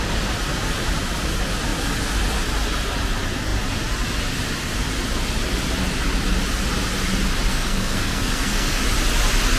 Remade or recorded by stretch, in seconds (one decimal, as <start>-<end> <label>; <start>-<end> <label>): 0.0-7.5 recorded; 7.5-8.8 remade; 8.8-9.6 recorded